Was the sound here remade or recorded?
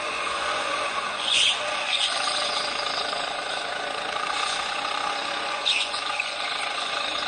remade